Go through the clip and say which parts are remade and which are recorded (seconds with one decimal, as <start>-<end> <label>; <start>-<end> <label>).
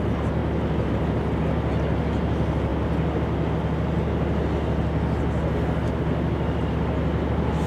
0.0-7.7 recorded